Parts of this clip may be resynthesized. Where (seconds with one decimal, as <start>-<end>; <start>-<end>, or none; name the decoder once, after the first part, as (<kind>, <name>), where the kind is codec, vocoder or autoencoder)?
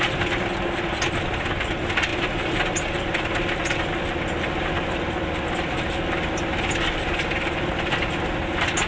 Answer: none